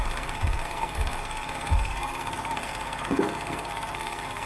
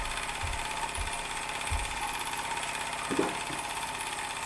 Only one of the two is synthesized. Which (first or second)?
first